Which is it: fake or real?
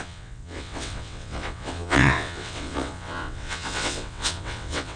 fake